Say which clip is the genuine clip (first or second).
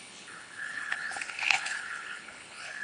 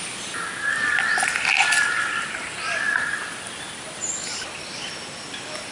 second